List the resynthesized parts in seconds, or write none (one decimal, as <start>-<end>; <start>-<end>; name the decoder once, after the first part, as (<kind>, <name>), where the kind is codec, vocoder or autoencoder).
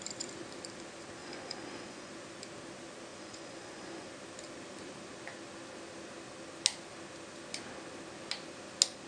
1.2-2.1 (vocoder, Vocos); 3.1-4.1